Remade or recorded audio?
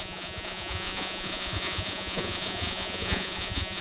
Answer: remade